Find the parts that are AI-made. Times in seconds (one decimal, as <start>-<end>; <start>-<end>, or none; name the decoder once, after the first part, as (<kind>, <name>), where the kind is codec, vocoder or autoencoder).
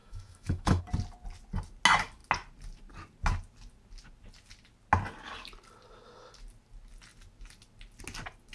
0.0-0.8 (autoencoder, DAC-VAE)